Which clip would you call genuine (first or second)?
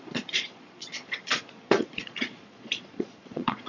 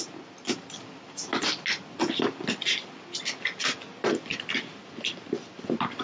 second